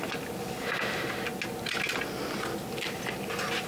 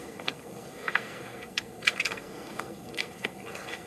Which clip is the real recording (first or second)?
first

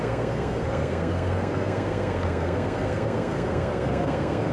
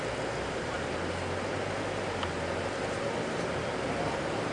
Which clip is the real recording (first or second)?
second